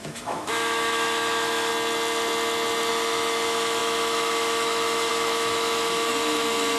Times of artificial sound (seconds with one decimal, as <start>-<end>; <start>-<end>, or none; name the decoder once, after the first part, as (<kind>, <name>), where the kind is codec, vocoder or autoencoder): 0.0-1.7 (autoencoder, DAC-VAE); 2.9-6.8